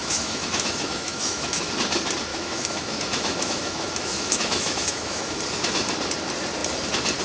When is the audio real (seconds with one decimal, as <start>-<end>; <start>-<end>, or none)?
1.7-2.3; 5.4-7.2